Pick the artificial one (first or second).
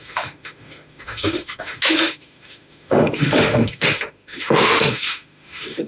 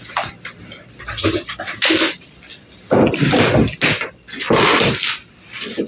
first